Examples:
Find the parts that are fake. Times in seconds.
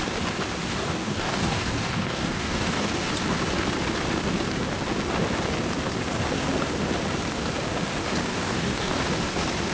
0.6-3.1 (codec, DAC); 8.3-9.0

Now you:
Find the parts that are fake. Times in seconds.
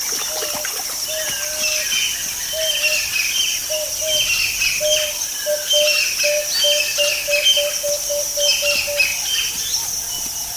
none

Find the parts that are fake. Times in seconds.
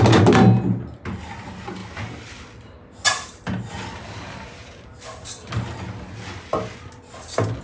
none